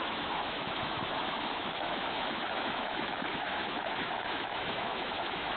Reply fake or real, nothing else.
fake